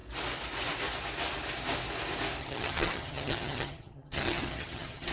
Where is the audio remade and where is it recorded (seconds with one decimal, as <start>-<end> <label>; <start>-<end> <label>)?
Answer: 0.0-2.4 recorded; 2.4-5.1 remade